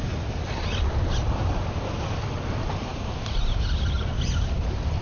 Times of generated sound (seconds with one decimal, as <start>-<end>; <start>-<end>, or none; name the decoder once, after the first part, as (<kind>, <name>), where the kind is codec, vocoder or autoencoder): none

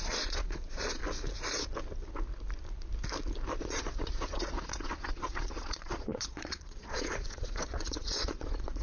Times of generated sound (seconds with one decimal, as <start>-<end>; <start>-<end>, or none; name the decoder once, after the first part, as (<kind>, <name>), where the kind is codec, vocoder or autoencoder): 0.0-1.0 (vocoder, Vocos); 3.6-8.8

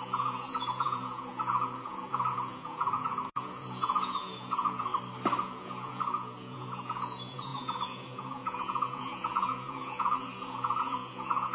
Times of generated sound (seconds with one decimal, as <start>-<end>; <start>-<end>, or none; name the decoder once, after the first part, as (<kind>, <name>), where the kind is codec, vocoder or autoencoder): 0.0-4.9 (vocoder, Vocos); 5.4-11.5

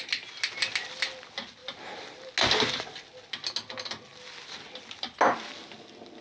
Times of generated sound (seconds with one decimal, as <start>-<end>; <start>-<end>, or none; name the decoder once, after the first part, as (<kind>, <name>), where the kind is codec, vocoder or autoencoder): none

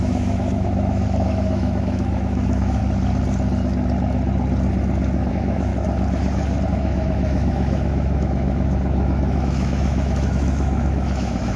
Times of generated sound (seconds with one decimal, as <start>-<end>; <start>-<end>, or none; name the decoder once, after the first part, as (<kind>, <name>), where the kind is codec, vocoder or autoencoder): 0.0-2.8 (autoencoder, DAC-VAE); 5.3-5.7; 6.7-11.6

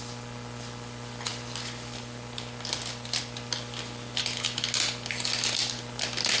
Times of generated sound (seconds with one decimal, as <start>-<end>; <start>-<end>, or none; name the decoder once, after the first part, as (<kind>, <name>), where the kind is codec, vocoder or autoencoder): none